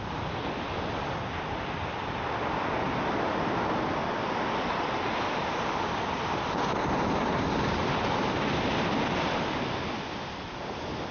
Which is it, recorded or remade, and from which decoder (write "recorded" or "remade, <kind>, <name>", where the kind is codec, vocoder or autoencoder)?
recorded